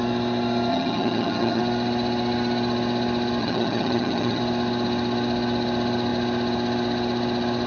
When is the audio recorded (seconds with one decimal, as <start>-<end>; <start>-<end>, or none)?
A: 0.0-0.7; 1.6-3.4; 4.4-7.7